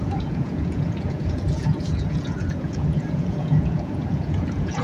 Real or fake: fake